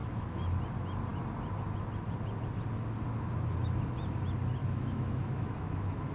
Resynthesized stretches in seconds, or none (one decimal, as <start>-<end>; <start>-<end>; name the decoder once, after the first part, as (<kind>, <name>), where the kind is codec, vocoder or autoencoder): 0.0-0.6 (autoencoder, DAC-VAE); 4.6-6.1

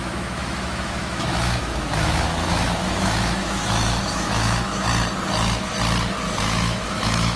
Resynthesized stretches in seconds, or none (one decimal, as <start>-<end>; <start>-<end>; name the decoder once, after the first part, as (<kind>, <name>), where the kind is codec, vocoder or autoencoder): 0.0-4.9 (autoencoder, DAC-VAE); 6.4-7.4

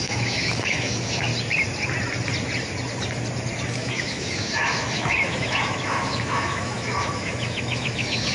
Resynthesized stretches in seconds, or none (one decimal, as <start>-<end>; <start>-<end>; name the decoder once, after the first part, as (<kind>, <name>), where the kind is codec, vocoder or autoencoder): 0.0-1.3 (autoencoder, DAC-VAE); 3.7-8.3

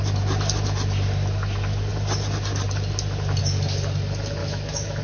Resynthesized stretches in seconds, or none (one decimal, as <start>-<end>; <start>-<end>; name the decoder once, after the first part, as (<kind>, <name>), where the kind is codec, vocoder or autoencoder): 4.4-5.0 (autoencoder, DAC-VAE)

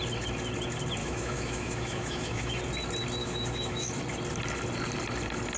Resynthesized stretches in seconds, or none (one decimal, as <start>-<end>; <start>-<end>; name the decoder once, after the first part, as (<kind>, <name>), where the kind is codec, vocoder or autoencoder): 1.0-2.6 (autoencoder, DAC-VAE); 3.2-3.9

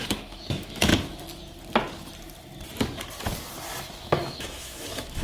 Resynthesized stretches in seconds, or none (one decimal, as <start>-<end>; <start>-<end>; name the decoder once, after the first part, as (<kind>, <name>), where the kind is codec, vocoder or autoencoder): 0.0-0.9 (autoencoder, DAC-VAE); 4.0-5.2